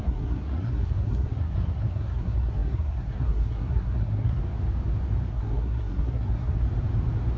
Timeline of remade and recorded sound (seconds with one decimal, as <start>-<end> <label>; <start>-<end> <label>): 0.0-4.4 remade; 4.4-5.3 recorded; 5.3-6.6 remade; 6.6-7.4 recorded